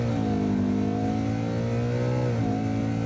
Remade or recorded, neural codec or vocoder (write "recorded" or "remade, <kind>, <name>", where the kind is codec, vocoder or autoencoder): recorded